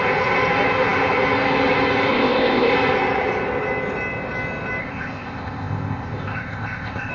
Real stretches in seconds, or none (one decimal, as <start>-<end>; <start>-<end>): 0.0-2.1; 2.7-4.8